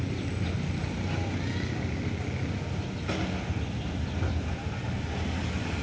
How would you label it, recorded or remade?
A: recorded